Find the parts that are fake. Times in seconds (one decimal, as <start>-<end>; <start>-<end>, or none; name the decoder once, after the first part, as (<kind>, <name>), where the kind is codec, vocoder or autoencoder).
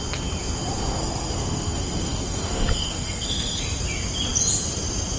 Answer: 1.0-3.6 (codec, SNAC)